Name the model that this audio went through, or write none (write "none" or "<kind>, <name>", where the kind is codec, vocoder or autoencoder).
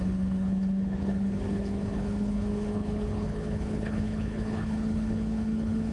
codec, HILCodec